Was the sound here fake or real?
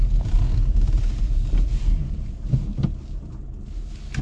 real